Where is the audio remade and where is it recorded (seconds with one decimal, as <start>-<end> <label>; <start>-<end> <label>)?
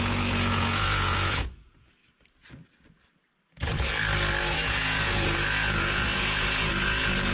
0.0-2.0 remade; 2.0-4.4 recorded; 4.4-7.3 remade